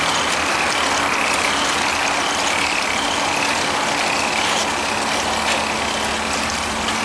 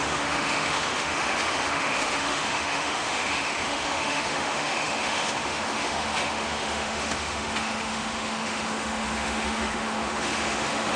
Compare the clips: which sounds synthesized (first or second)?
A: second